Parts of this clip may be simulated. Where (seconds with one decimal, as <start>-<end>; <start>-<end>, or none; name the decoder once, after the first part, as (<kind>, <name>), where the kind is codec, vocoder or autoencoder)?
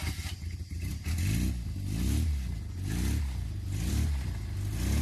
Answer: none